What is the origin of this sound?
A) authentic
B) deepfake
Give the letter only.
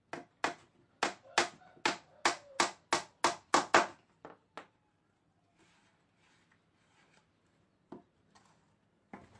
A